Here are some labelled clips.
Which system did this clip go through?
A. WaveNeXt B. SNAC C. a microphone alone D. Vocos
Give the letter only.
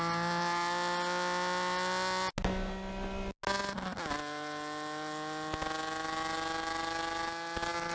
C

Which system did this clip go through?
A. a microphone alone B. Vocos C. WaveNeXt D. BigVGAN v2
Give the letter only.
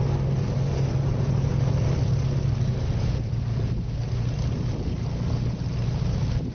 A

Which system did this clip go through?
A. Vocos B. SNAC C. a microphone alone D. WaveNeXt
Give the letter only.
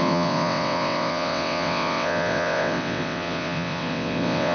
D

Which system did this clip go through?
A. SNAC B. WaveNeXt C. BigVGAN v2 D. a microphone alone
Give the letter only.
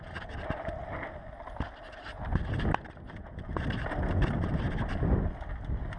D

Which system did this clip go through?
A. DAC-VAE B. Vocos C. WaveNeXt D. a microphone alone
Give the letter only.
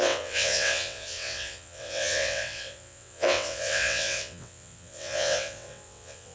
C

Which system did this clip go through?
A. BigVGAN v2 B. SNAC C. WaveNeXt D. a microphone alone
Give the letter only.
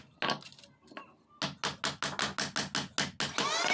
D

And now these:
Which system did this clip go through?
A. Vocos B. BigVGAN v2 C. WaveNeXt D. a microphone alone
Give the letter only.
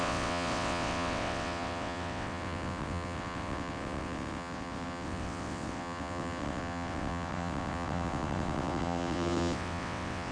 C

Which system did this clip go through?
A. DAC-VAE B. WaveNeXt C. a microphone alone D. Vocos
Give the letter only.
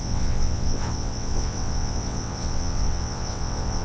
B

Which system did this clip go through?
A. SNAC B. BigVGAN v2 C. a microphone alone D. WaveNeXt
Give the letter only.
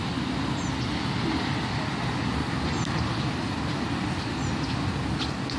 C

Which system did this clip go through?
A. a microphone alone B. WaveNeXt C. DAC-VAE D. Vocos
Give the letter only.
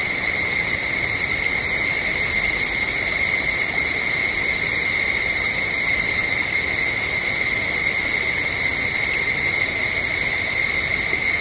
A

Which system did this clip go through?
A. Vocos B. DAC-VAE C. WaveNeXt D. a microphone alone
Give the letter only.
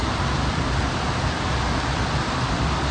D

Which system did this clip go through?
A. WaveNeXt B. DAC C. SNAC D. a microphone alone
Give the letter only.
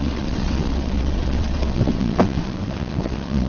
A